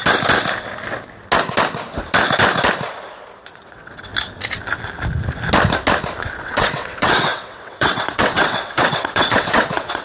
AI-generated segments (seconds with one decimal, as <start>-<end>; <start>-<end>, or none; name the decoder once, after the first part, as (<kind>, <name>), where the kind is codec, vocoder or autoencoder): 3.5-4.1 (vocoder, WaveNeXt); 6.2-10.0